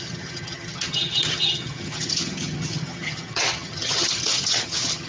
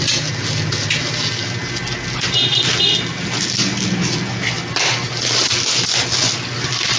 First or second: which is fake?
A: first